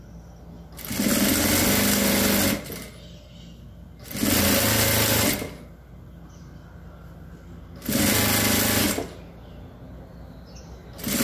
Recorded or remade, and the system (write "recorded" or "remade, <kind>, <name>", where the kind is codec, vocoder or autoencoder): recorded